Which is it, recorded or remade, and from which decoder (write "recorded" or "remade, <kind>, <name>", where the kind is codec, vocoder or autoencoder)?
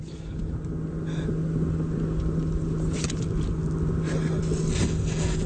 recorded